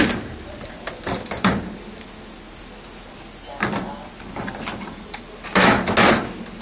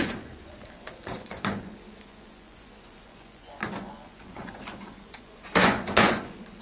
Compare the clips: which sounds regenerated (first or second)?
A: second